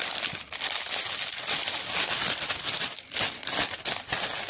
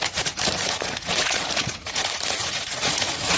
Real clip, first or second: first